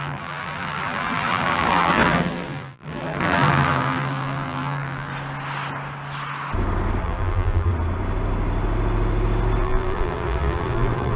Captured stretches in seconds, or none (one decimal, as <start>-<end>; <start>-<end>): 5.1-7.0; 7.7-9.6